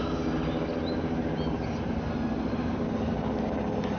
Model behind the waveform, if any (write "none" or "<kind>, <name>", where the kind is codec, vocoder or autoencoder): none